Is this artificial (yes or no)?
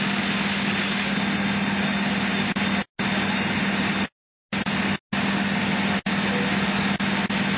no